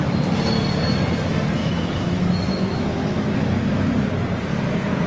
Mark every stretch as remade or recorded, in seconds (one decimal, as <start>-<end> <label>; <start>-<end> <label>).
0.0-1.6 recorded; 1.6-3.9 remade; 3.9-5.1 recorded